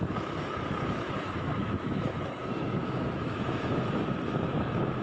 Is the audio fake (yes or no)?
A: yes